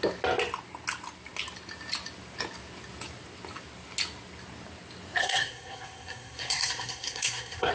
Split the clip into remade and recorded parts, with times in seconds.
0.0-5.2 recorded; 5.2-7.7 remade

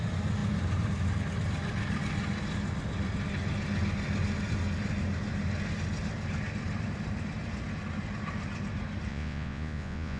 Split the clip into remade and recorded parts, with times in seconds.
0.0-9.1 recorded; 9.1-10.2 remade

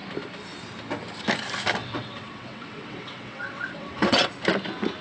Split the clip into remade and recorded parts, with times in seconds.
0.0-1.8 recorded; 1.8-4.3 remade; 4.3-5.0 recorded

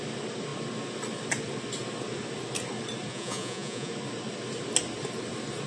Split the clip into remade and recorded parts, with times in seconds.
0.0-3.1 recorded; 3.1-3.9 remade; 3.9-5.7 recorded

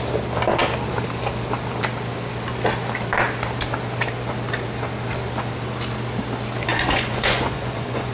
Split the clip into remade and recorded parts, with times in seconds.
0.0-6.7 recorded; 6.7-8.1 remade

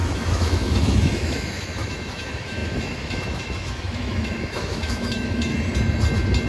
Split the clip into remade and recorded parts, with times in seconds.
0.0-5.5 remade; 5.5-6.5 recorded

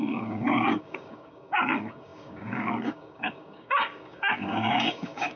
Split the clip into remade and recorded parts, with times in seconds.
0.0-5.4 remade